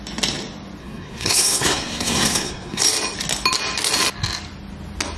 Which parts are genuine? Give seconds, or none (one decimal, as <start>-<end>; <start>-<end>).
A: 0.0-0.8; 2.8-5.2